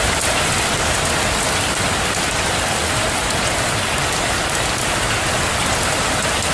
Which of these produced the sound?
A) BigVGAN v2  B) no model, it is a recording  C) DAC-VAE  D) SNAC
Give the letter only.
B